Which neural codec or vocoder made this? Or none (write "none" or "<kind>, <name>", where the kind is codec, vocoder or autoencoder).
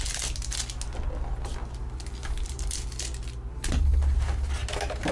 none